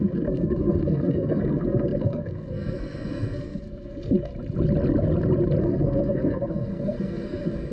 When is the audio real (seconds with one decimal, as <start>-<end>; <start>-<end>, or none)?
4.3-5.6